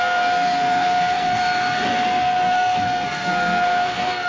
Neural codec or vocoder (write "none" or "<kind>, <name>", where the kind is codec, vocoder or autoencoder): codec, SNAC